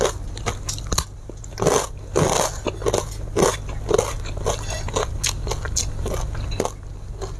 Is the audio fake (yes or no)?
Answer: no